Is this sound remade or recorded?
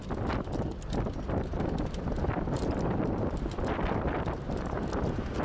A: remade